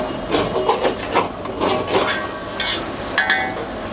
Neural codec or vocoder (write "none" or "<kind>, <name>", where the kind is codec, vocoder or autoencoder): none